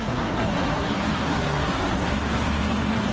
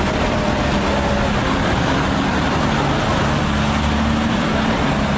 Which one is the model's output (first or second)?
first